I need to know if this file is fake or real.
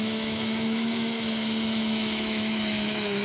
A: fake